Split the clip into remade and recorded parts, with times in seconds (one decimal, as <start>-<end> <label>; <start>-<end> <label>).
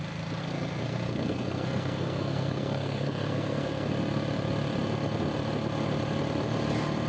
0.0-0.4 recorded; 0.4-3.9 remade; 3.9-7.1 recorded